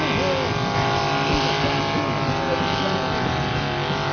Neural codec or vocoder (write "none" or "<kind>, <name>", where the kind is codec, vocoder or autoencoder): none